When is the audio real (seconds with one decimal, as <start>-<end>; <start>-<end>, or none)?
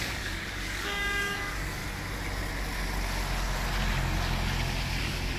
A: 1.8-5.0